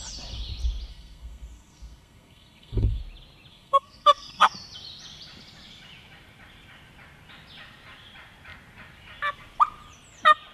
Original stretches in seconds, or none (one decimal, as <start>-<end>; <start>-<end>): 0.0-0.9; 3.0-3.5; 4.5-10.5